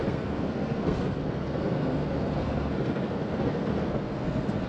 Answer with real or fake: fake